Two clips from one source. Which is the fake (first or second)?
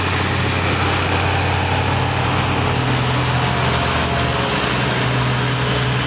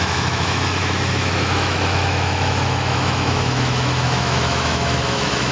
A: second